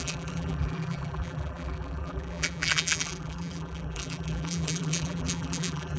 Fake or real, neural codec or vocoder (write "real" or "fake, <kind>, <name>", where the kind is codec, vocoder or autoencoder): fake, vocoder, BigVGAN v2